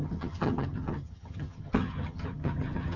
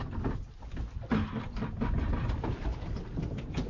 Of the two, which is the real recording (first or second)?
second